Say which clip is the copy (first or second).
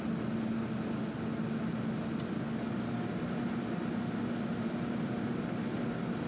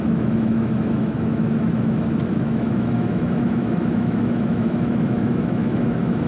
second